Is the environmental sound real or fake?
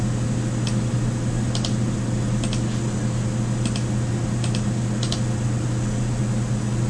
real